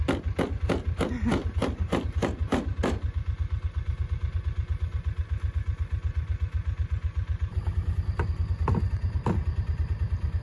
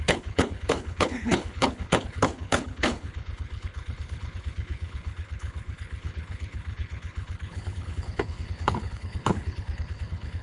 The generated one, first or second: second